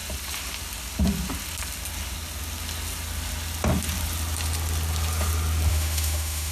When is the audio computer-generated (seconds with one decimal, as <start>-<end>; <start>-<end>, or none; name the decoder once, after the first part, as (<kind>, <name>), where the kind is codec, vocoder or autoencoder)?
5.7-6.5 (autoencoder, DAC-VAE)